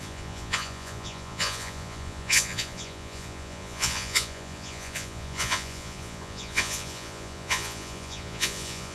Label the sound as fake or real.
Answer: fake